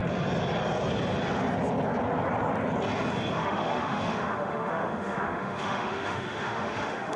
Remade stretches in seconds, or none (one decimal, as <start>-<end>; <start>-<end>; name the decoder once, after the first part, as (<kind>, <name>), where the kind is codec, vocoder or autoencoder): 3.4-7.2 (autoencoder, DAC-VAE)